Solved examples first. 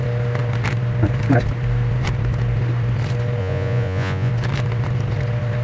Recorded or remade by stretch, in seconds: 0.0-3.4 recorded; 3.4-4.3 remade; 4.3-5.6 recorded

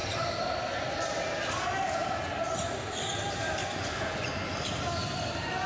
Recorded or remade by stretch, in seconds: 0.0-3.6 recorded; 3.6-4.3 remade; 4.3-5.7 recorded